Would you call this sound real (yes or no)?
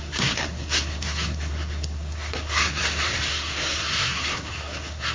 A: no